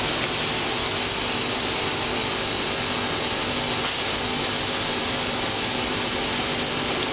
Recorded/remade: recorded